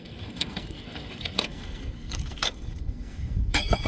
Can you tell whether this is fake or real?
fake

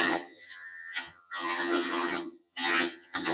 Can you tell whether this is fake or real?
fake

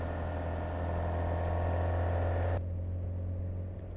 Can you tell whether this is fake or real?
real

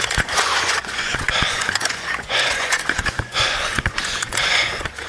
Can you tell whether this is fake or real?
fake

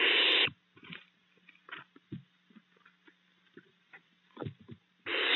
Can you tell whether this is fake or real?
real